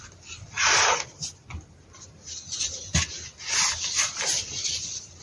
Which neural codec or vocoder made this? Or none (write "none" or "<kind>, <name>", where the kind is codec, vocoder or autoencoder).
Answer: none